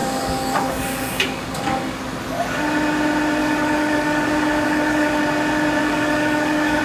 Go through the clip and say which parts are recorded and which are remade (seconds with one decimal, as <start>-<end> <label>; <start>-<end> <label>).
0.0-2.0 remade; 2.0-3.4 recorded; 3.4-5.2 remade; 5.2-5.8 recorded; 5.8-6.8 remade